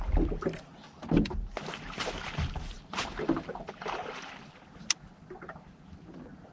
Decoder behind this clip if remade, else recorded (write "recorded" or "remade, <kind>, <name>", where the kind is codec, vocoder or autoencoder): recorded